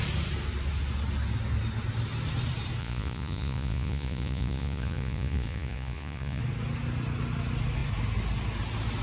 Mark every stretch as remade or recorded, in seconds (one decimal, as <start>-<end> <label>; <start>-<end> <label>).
0.0-2.8 recorded; 2.8-6.4 remade; 6.4-9.0 recorded